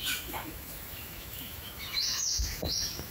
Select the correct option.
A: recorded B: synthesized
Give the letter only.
B